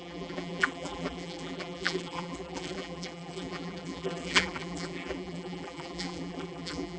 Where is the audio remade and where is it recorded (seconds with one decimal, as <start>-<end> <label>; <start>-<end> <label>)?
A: 0.0-7.0 remade